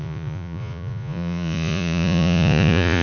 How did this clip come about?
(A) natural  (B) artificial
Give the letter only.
B